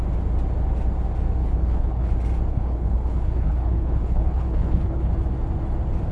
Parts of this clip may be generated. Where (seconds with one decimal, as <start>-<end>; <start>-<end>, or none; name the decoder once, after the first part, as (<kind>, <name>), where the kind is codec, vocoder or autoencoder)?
1.4-2.1 (codec, HILCodec); 2.5-5.1